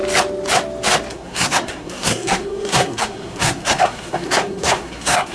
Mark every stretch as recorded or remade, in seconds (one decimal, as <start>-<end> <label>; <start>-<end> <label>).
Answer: 0.0-1.1 recorded; 1.1-5.3 remade